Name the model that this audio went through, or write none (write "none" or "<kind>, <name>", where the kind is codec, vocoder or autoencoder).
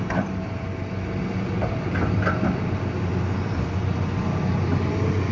none